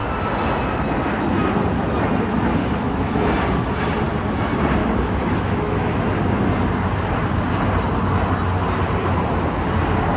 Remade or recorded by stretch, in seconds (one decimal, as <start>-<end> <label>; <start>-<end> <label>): 0.0-2.6 recorded; 2.6-3.3 remade; 3.3-4.8 recorded; 4.8-6.0 remade; 6.0-10.2 recorded